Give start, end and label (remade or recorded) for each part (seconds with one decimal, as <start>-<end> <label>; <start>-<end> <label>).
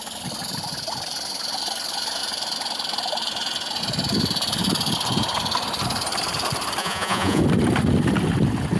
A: 0.0-6.8 recorded; 6.8-7.4 remade; 7.4-8.8 recorded